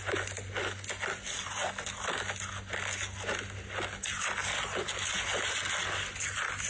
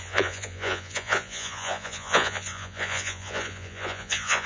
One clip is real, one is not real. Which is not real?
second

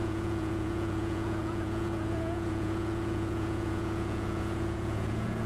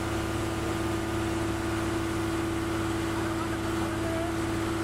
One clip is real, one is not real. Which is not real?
first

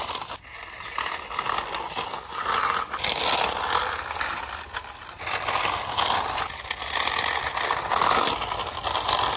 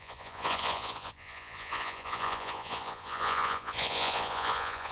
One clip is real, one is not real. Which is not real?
second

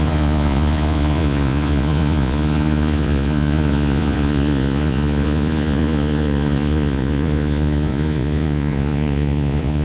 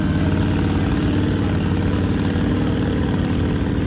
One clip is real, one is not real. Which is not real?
first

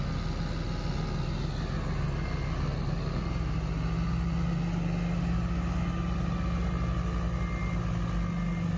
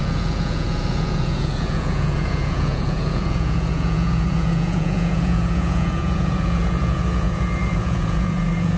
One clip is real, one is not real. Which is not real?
second